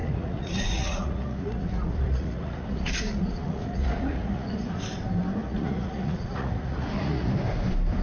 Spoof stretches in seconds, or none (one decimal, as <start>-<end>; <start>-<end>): 0.0-4.8; 5.4-7.3